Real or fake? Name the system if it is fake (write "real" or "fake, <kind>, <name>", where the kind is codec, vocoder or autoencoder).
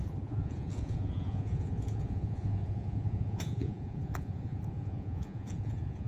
fake, vocoder, Vocos